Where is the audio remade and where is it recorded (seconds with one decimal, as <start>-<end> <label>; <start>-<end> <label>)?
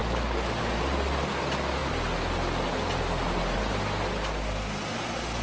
0.0-5.4 recorded